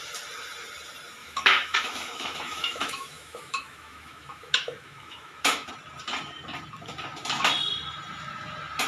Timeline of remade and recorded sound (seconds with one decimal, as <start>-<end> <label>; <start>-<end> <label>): 0.0-1.2 recorded; 1.2-5.7 remade; 5.7-8.9 recorded